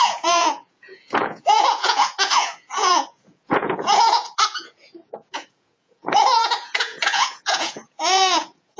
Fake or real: fake